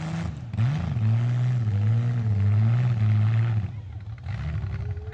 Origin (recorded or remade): recorded